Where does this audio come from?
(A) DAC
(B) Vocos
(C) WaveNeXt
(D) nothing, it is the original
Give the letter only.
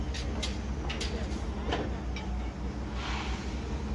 D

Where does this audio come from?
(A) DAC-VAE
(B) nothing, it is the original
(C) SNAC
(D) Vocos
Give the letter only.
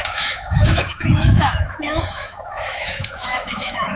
A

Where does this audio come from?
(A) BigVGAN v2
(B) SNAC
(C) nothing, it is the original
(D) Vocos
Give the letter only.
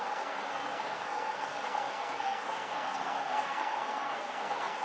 B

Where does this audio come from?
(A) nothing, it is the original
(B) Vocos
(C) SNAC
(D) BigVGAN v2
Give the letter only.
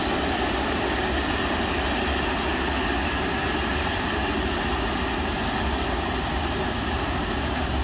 A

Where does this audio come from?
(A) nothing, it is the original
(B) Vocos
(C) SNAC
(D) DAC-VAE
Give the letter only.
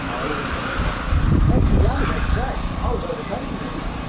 A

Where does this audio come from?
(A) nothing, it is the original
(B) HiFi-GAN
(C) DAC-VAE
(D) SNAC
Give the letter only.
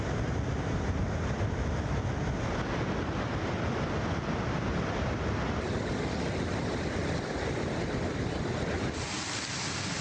A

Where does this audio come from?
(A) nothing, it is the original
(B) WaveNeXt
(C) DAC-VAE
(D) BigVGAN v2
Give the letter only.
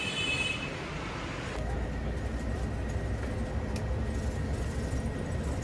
A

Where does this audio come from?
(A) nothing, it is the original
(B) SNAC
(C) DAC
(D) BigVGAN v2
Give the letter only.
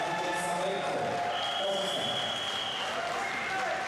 A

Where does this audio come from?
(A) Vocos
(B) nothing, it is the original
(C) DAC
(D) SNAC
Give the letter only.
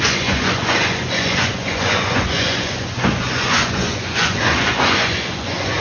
A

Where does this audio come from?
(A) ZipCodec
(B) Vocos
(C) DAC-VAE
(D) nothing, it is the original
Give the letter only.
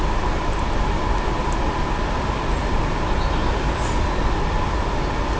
D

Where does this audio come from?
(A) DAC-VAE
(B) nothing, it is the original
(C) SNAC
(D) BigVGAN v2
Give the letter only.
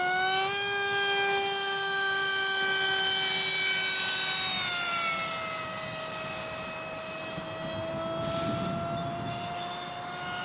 B